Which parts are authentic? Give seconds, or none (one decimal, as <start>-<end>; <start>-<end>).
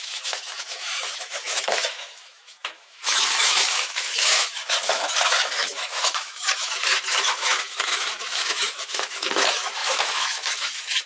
none